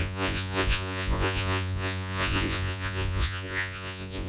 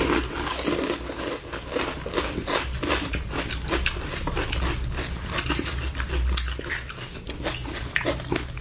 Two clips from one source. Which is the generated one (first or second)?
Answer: first